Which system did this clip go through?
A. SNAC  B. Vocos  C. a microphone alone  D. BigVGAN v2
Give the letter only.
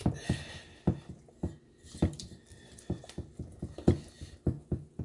C